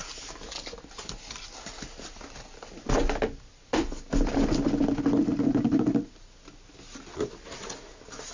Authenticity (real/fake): real